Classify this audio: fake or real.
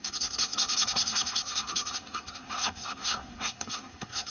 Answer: fake